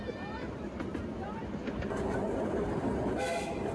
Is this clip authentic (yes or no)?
yes